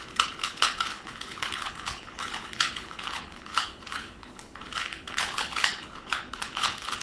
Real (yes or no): no